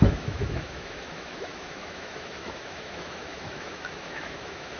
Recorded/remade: remade